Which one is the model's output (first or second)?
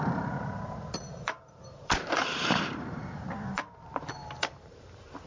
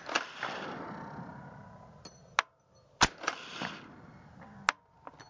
first